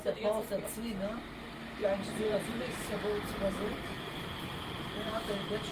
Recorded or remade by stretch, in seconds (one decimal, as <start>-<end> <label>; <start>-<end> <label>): 0.0-1.8 recorded; 1.8-2.7 remade; 2.7-3.9 recorded; 3.9-5.3 remade; 5.3-5.7 recorded

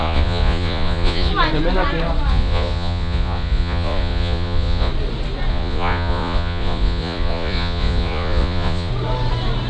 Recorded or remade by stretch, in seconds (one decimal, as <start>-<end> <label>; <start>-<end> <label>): 0.0-1.3 remade; 1.3-2.3 recorded; 2.3-4.9 remade; 4.9-5.5 recorded; 5.5-8.9 remade; 8.9-9.7 recorded

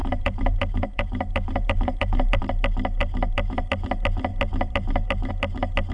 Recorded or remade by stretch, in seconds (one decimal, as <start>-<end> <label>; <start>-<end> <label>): 0.0-2.4 remade; 2.4-3.0 recorded; 3.0-3.7 remade; 3.7-4.3 recorded; 4.3-5.3 remade; 5.3-5.9 recorded

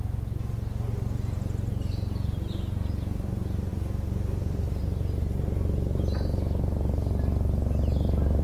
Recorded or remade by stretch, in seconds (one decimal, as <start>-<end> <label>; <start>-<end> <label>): 0.0-8.4 recorded

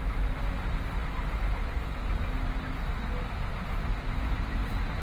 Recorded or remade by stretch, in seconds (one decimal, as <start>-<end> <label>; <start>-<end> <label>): 0.0-5.0 recorded

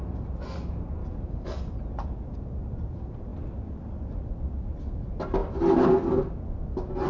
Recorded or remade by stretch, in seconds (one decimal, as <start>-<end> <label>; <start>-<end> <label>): 0.0-7.1 recorded

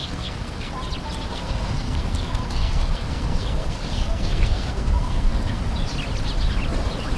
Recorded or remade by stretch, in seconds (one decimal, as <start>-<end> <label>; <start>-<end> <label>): 0.0-0.7 remade; 0.7-1.3 recorded; 1.3-5.6 remade; 5.6-7.2 recorded